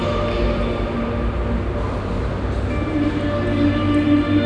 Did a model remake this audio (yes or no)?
no